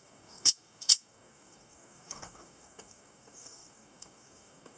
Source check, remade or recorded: remade